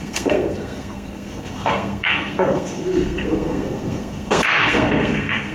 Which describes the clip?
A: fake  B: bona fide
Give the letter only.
A